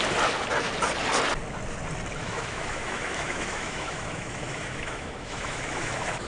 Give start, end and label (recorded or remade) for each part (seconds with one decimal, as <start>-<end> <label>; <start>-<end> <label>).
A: 0.0-2.2 recorded; 2.2-6.3 remade